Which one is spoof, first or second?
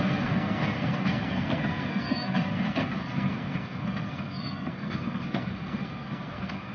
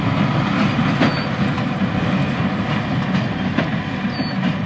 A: first